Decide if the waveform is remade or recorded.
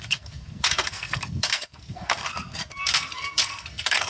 remade